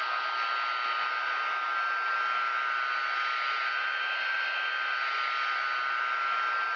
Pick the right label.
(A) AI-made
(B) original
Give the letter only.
B